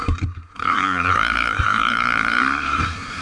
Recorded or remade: remade